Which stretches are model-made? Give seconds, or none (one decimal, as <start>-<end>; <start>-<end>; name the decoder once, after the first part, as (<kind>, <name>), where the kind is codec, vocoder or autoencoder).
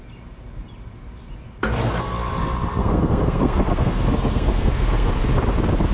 2.8-5.2 (codec, SNAC)